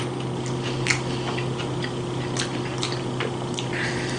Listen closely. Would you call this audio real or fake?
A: real